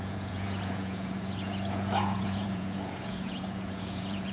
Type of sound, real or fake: fake